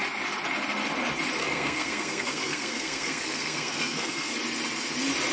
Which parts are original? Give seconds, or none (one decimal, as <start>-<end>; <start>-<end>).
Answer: 0.0-1.4; 4.4-5.3